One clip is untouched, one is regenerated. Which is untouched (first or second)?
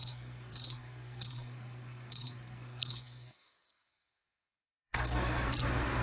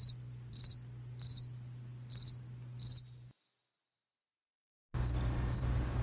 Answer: second